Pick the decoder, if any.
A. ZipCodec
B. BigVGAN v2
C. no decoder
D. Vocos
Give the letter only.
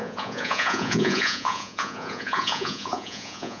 D